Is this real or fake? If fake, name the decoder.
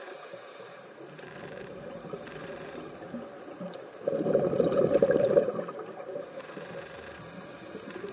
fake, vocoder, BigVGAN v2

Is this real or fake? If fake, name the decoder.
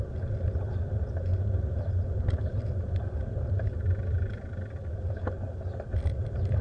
fake, vocoder, BigVGAN v2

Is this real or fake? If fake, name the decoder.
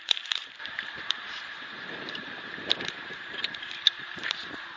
fake, vocoder, BigVGAN v2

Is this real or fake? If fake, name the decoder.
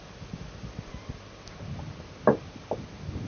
real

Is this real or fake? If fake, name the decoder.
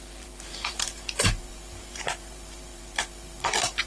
fake, vocoder, BigVGAN v2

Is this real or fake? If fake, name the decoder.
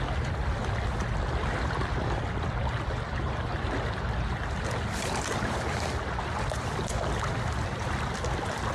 real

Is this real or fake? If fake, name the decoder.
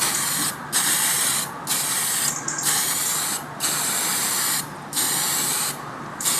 real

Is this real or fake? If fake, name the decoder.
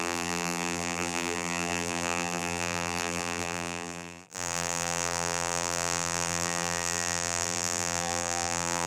fake, vocoder, BigVGAN v2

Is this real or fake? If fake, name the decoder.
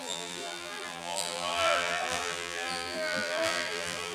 fake, vocoder, BigVGAN v2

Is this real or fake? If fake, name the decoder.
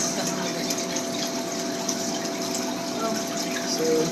real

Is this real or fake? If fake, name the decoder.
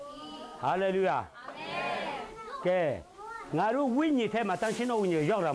real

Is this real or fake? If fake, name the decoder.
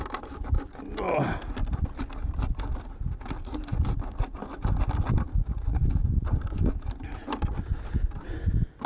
real